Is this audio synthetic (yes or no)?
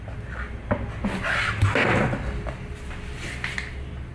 no